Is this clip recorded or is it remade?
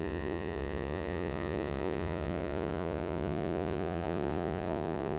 remade